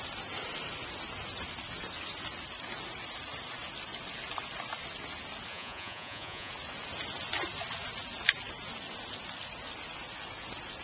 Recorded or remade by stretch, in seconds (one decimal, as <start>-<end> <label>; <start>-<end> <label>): 0.0-5.5 recorded; 5.5-6.5 remade; 6.5-10.8 recorded